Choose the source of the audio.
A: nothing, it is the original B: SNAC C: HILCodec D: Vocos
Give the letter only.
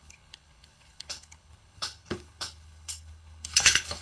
C